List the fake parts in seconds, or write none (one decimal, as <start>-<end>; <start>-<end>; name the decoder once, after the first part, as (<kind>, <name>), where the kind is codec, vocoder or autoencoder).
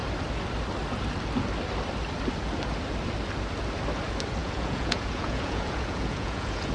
4.4-6.7 (vocoder, Vocos)